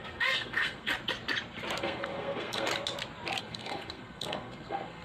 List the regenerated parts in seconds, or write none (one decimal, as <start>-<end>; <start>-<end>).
0.0-0.9; 1.8-2.7; 3.4-5.0